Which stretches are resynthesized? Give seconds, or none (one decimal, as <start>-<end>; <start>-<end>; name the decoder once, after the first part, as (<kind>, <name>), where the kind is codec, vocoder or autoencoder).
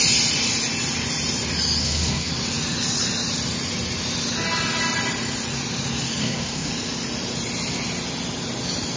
1.8-2.3 (codec, SNAC); 6.2-6.7